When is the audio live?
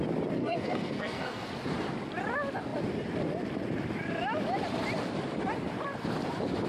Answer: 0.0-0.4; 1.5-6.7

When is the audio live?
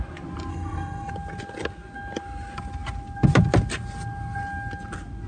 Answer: 0.0-0.5; 1.1-5.3